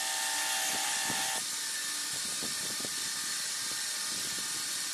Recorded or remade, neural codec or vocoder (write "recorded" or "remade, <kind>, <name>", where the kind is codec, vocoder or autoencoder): recorded